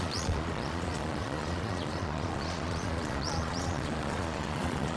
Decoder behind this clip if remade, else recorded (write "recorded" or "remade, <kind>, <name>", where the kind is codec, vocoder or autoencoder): remade, vocoder, Vocos